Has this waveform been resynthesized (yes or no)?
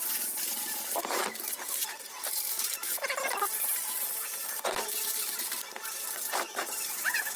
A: yes